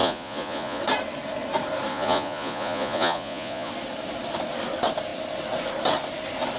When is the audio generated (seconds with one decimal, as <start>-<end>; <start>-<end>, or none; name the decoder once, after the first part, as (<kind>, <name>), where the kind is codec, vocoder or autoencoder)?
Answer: 0.0-0.8 (vocoder, Vocos); 1.9-3.7